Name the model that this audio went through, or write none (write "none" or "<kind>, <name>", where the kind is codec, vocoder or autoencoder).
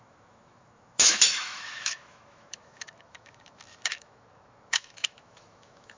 autoencoder, DAC-VAE